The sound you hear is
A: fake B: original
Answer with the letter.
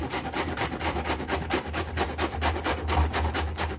B